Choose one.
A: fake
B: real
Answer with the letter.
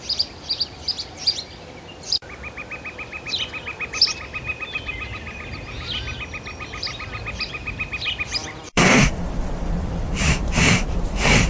A